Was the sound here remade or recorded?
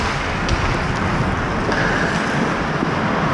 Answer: recorded